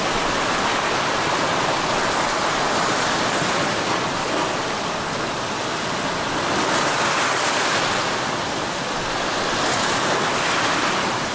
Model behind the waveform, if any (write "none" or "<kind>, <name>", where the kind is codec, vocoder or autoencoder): none